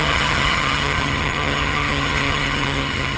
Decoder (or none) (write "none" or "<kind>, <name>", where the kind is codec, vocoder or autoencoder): vocoder, HiFi-GAN